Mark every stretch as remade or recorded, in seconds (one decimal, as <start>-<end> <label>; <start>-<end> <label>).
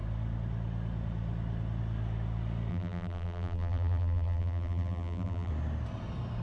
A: 0.0-2.7 recorded; 2.7-5.5 remade; 5.5-6.4 recorded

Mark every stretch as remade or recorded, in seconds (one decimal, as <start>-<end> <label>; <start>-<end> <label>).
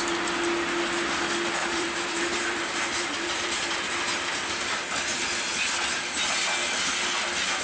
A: 0.0-1.6 recorded; 1.6-3.8 remade; 3.8-7.6 recorded